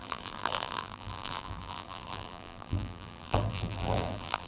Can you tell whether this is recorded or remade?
remade